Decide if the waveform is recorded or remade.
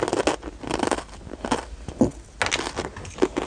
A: recorded